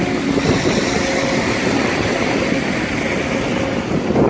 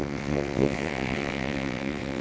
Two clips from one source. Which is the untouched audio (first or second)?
first